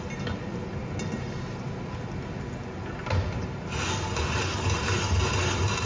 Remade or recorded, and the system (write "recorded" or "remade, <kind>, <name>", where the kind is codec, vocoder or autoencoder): recorded